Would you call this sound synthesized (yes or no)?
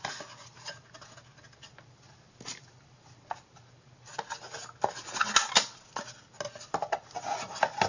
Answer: no